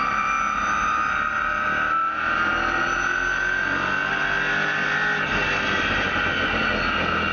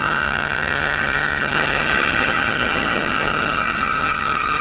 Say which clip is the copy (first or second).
second